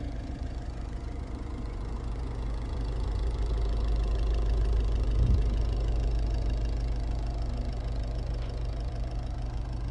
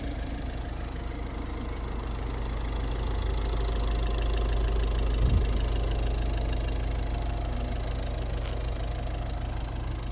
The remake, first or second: first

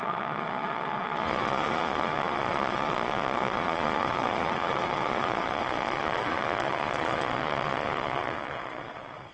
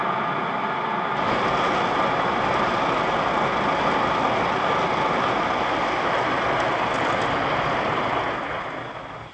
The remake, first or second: first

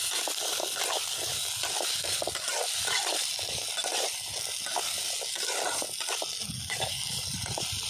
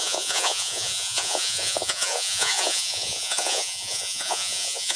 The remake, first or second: second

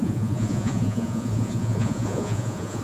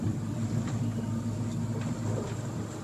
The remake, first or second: first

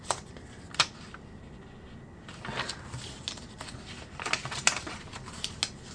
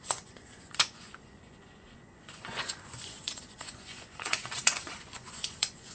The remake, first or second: second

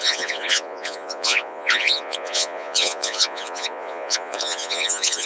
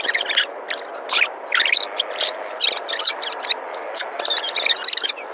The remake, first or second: first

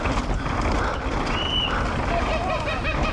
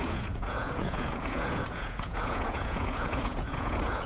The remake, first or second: second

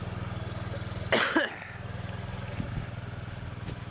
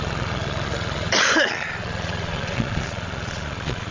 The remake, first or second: second